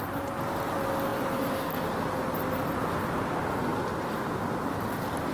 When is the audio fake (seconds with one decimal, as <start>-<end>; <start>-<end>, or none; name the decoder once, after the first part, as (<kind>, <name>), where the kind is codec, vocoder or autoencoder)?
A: none